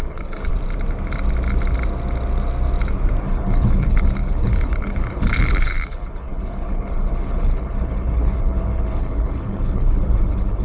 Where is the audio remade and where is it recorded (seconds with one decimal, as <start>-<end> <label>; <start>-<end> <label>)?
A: 0.0-0.5 remade; 0.5-3.2 recorded; 3.2-10.6 remade